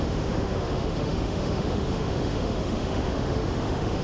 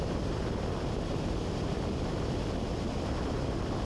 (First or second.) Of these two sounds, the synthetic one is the first